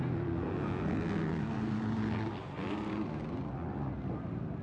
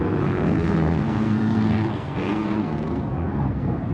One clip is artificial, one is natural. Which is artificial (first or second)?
second